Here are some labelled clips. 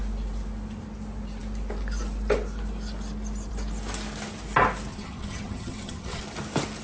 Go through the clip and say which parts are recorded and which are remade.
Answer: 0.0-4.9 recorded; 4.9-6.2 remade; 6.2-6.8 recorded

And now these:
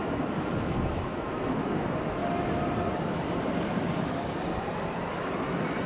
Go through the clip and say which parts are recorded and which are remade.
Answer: 0.0-2.2 remade; 2.2-5.9 recorded

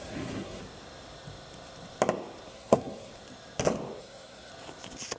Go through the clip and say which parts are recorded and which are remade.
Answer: 0.0-0.6 remade; 0.6-2.5 recorded; 2.5-3.1 remade; 3.1-4.0 recorded; 4.0-4.5 remade; 4.5-5.2 recorded